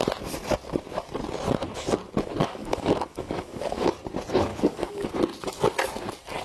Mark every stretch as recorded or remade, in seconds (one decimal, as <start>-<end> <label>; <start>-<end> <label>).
0.0-2.4 recorded; 2.4-3.9 remade; 3.9-4.5 recorded; 4.5-5.1 remade; 5.1-6.4 recorded